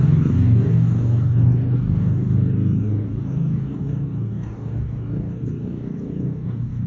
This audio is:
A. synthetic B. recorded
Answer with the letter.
A